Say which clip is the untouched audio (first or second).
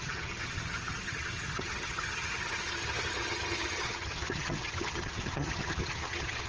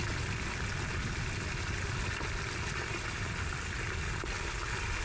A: second